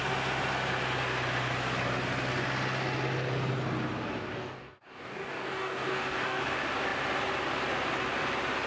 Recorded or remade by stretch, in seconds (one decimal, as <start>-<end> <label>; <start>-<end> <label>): 0.0-4.3 recorded; 4.3-6.4 remade; 6.4-8.7 recorded